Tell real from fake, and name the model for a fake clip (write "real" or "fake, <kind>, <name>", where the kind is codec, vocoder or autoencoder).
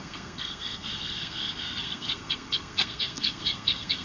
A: fake, codec, SNAC